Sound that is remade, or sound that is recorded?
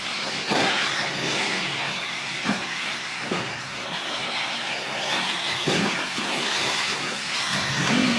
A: remade